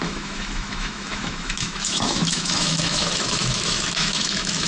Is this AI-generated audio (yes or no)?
yes